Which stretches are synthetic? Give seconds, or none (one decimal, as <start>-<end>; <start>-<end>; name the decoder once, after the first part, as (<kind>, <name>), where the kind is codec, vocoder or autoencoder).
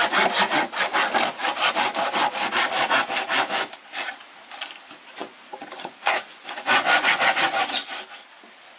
5.2-7.7 (vocoder, Vocos)